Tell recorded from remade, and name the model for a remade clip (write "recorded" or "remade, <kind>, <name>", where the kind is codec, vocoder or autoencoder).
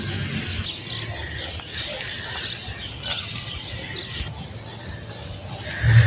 recorded